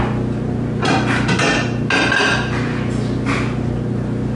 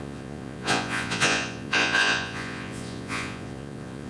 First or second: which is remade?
second